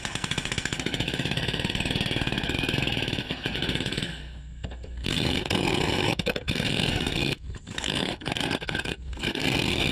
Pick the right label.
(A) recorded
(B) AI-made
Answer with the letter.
B